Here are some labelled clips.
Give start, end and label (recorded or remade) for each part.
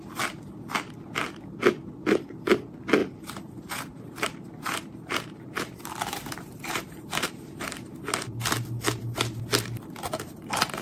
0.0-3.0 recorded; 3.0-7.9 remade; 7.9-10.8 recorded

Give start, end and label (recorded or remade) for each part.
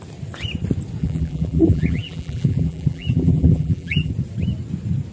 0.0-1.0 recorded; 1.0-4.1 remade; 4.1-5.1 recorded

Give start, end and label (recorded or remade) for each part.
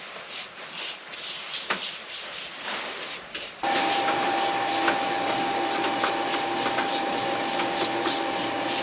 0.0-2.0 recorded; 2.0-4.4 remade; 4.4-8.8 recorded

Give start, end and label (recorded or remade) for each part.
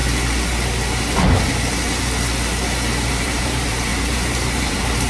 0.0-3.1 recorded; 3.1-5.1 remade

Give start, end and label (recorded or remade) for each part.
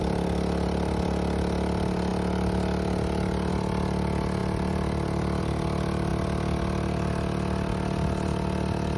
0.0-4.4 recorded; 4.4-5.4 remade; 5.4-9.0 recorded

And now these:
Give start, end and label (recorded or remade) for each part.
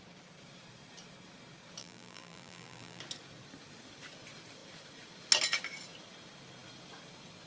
0.0-1.8 recorded; 1.8-3.0 remade; 3.0-7.5 recorded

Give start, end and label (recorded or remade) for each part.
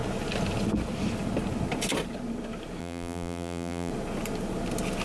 0.0-2.8 recorded; 2.8-3.9 remade; 3.9-5.0 recorded